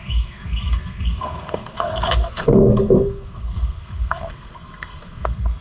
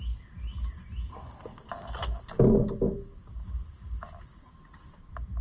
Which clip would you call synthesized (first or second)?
first